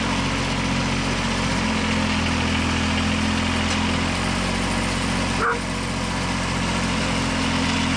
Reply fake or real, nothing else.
real